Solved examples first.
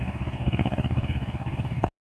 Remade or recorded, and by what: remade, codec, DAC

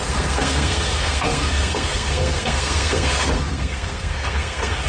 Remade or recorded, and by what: remade, codec, SNAC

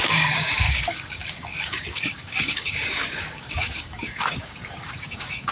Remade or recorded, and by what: remade, codec, DAC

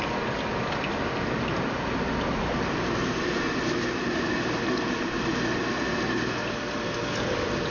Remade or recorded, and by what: recorded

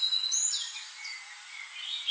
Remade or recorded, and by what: recorded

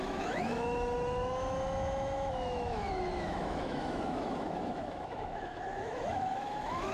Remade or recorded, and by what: remade, autoencoder, DAC-VAE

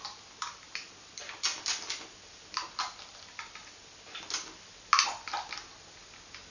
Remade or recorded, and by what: recorded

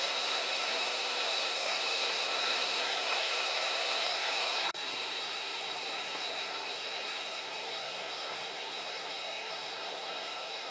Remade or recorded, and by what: remade, codec, SNAC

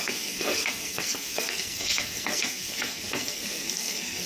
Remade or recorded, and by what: remade, codec, SNAC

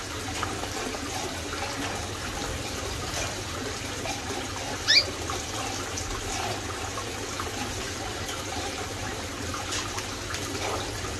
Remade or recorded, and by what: recorded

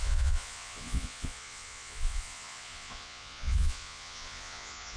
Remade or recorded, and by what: remade, vocoder, Vocos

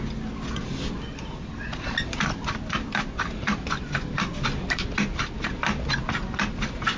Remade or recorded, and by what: recorded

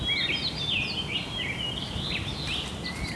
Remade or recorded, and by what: recorded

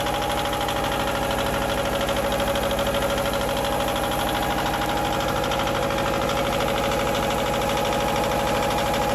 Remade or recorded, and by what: recorded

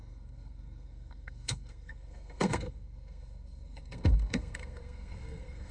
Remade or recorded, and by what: remade, codec, SNAC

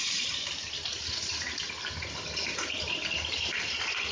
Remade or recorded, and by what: recorded